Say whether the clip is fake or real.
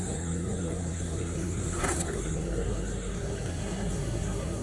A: fake